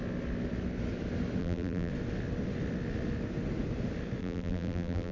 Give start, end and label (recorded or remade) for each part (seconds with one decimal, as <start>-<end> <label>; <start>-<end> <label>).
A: 0.0-1.4 recorded; 1.4-1.9 remade; 1.9-4.2 recorded; 4.2-5.1 remade